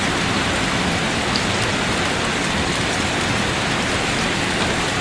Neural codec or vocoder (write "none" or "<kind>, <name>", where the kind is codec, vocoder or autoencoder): none